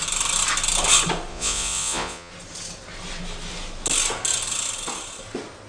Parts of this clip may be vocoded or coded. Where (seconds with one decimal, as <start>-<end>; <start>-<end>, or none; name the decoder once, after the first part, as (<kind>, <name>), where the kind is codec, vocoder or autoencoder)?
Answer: 1.3-2.3 (vocoder, Vocos)